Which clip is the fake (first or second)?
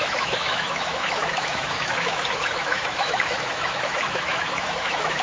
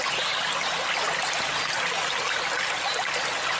first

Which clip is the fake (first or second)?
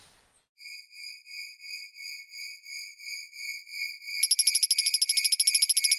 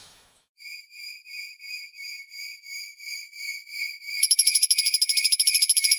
second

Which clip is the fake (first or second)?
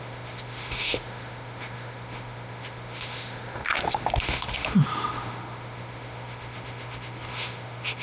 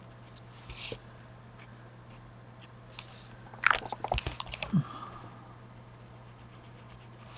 first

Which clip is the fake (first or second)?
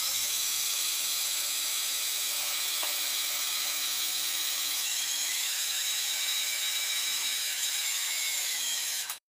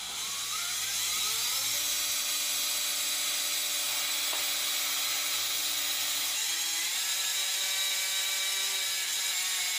first